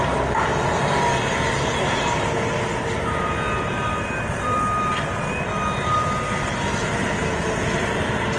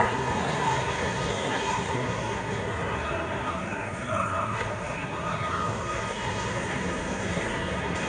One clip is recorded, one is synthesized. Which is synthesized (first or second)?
second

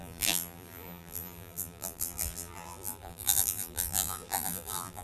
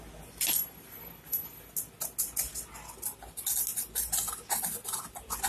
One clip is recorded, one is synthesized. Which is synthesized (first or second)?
first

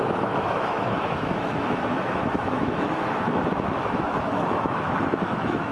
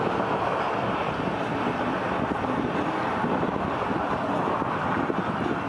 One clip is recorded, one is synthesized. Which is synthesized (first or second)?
first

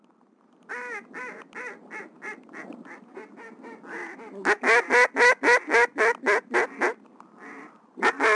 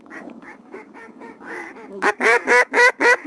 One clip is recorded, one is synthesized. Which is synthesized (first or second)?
second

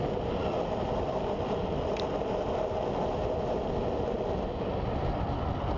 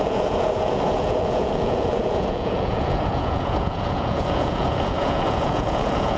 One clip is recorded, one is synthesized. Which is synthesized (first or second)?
second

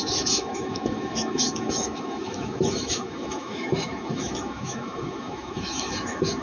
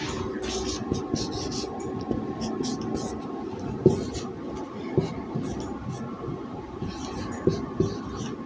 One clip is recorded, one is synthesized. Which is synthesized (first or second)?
first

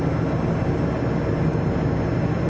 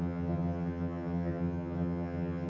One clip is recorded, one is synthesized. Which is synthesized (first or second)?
second